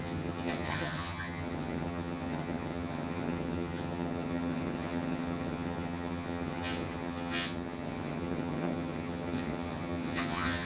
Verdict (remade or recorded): remade